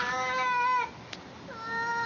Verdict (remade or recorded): recorded